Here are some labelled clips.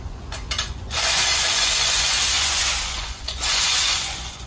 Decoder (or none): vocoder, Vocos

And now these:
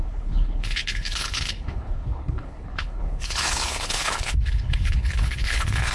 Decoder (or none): codec, HILCodec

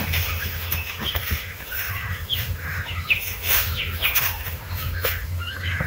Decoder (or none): autoencoder, DAC-VAE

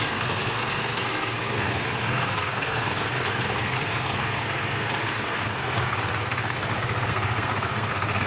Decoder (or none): codec, SNAC